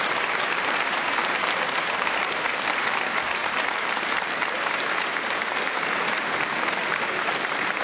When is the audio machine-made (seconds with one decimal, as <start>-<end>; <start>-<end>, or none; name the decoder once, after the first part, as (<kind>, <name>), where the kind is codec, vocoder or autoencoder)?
0.0-7.8 (vocoder, BigVGAN v2)

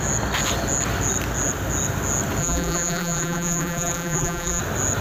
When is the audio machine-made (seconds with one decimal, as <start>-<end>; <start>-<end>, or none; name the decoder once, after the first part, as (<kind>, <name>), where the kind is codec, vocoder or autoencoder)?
2.4-4.6 (vocoder, BigVGAN v2)

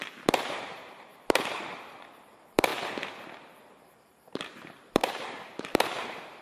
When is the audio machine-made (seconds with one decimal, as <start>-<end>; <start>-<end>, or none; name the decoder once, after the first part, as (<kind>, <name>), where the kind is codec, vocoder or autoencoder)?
0.0-1.1 (vocoder, BigVGAN v2); 1.6-2.7; 3.8-6.4